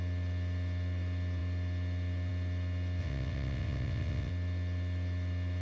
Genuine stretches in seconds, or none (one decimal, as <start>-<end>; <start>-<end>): 0.0-3.0; 4.3-5.6